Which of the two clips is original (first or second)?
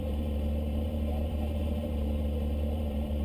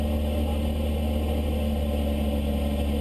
second